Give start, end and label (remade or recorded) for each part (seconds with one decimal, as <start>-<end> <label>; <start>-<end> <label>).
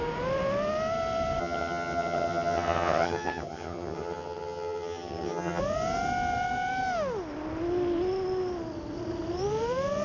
0.0-1.4 recorded; 1.4-5.6 remade; 5.6-10.0 recorded